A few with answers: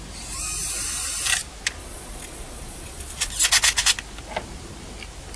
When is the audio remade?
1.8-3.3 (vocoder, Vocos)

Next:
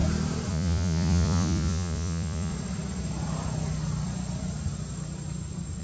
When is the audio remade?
0.5-2.5 (vocoder, Vocos)

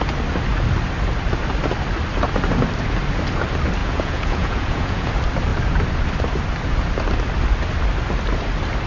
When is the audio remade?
3.8-5.1 (vocoder, Vocos)

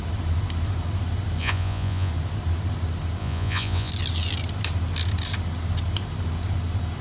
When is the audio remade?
1.4-2.1 (vocoder, Vocos); 3.2-3.9